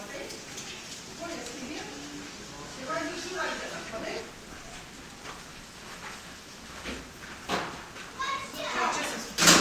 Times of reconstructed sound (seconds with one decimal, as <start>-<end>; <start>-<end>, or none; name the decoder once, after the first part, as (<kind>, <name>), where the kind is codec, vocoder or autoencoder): 2.7-4.2 (autoencoder, DAC-VAE); 5.5-7.0